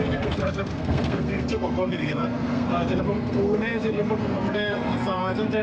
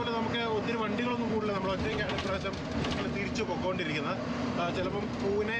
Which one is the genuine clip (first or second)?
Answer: second